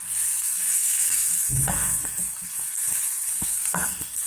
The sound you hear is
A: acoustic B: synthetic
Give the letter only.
B